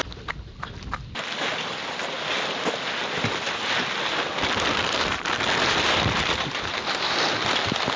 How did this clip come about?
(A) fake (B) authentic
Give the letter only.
B